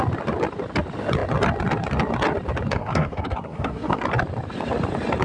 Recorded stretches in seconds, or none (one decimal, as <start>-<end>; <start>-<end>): 0.0-2.7; 4.0-5.2